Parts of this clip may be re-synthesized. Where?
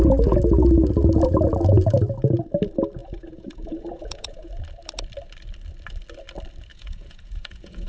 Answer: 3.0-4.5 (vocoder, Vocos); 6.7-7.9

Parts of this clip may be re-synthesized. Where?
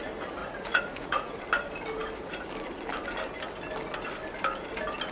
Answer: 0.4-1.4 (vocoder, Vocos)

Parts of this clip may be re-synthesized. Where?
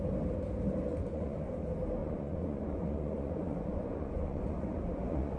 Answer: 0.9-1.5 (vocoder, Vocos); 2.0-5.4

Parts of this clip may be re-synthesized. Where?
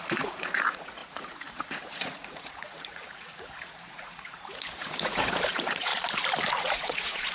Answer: 0.0-5.9 (vocoder, Vocos); 6.6-7.3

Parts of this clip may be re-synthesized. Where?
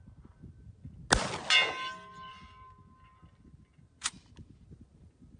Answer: none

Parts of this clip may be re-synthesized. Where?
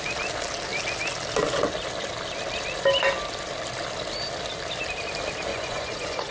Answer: 5.5-6.3 (vocoder, Vocos)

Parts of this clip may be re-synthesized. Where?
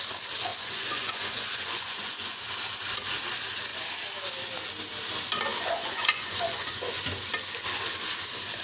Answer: 0.5-2.4 (vocoder, Vocos); 5.5-7.0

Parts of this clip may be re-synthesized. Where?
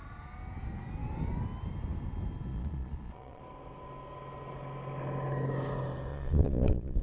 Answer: 2.5-3.4 (vocoder, Vocos); 6.1-7.0